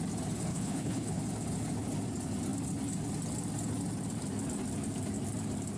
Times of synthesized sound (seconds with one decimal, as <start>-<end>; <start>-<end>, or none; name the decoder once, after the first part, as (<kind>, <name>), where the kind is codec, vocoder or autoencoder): 0.5-1.2 (codec, HILCodec)